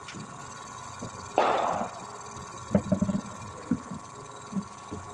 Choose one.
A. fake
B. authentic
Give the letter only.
B